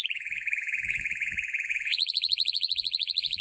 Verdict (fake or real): fake